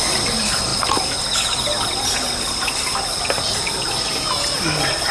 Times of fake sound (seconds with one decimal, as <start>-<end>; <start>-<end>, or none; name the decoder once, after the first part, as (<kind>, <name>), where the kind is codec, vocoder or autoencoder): none